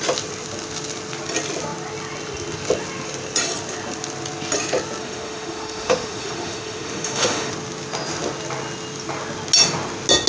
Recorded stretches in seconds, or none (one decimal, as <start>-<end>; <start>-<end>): 0.0-5.0; 7.5-10.3

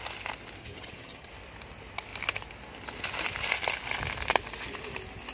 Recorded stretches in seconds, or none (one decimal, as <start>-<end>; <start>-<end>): 0.0-0.6; 1.3-5.3

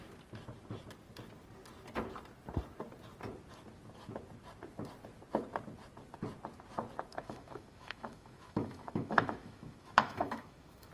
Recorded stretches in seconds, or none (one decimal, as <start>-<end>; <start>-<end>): 0.0-7.1

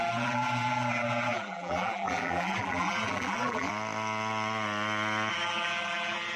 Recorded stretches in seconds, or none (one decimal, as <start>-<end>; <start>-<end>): 3.7-5.3

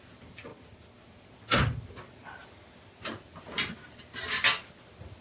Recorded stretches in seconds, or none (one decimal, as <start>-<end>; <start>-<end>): 0.0-5.2

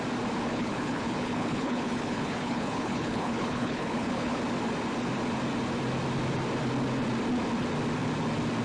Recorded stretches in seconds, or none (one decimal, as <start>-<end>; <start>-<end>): 0.0-0.5; 4.4-8.6